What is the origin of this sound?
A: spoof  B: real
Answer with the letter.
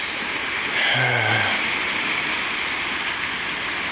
B